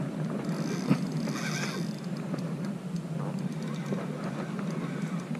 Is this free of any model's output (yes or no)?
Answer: yes